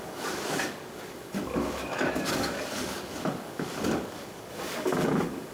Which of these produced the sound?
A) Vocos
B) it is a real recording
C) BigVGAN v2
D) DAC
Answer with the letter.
D